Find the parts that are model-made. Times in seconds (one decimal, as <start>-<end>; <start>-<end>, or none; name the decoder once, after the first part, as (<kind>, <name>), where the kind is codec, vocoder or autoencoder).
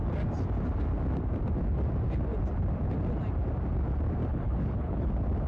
4.3-5.1 (codec, HILCodec)